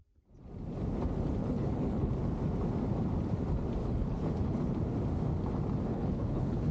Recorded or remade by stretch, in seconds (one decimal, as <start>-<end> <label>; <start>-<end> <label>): 0.0-1.4 recorded; 1.4-2.1 remade; 2.1-3.8 recorded; 3.8-4.7 remade; 4.7-5.9 recorded; 5.9-6.7 remade